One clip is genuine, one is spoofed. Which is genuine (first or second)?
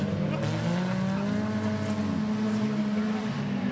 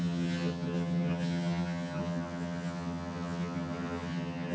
first